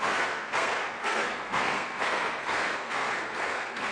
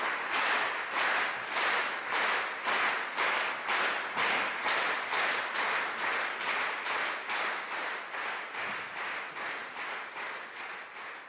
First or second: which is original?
second